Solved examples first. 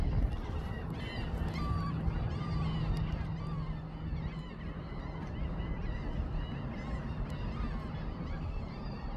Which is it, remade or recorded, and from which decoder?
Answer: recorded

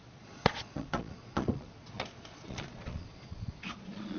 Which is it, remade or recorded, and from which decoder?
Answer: remade, vocoder, Vocos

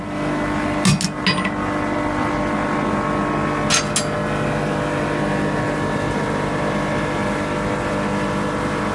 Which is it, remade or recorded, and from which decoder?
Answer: recorded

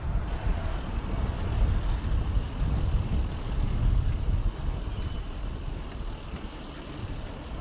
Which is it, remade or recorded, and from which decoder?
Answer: recorded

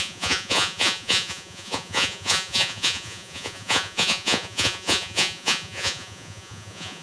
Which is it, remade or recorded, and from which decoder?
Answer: remade, vocoder, Vocos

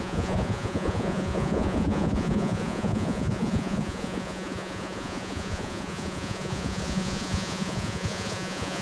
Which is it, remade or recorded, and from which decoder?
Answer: remade, vocoder, Vocos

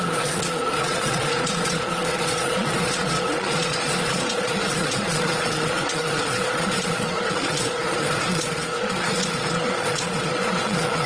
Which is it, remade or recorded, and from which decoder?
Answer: remade, vocoder, Vocos